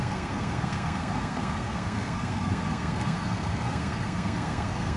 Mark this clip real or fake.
fake